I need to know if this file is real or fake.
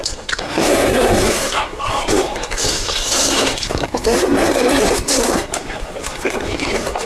fake